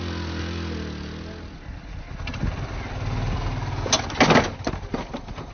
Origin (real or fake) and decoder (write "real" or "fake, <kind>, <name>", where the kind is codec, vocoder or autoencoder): real